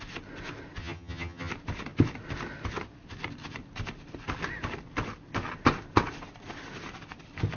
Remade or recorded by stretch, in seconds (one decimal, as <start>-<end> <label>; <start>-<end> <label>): 0.0-0.8 recorded; 0.8-1.5 remade; 1.5-7.6 recorded